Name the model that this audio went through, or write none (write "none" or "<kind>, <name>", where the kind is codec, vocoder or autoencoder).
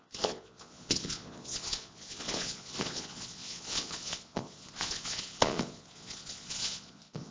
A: vocoder, Vocos